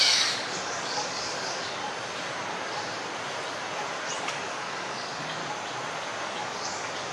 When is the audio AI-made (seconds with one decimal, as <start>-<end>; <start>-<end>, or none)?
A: 0.0-1.8; 4.2-5.4; 6.2-7.1